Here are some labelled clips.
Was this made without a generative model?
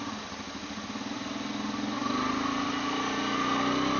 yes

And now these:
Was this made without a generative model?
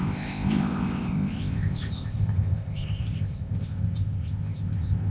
no